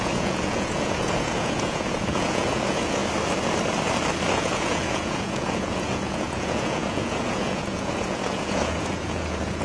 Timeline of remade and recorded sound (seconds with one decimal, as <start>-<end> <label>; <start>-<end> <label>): 0.0-3.0 remade; 3.0-4.3 recorded; 4.3-9.6 remade